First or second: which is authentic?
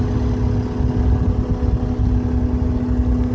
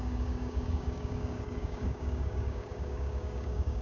first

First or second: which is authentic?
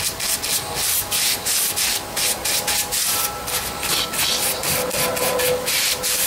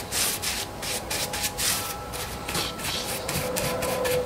first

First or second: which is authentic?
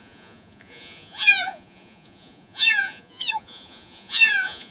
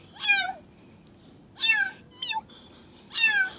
second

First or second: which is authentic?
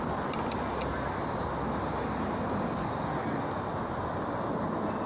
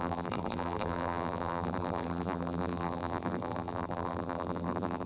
first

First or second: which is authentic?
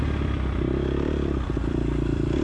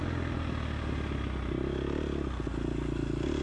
second